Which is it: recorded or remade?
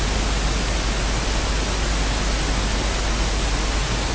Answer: recorded